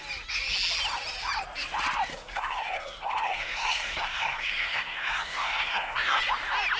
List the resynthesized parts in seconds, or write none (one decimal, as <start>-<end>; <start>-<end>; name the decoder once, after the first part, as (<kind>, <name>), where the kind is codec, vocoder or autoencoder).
2.1-6.2 (codec, SNAC)